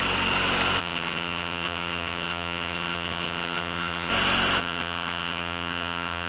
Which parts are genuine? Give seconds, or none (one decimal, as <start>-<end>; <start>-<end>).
0.0-0.8; 4.1-4.6